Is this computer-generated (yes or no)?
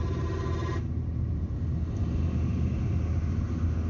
no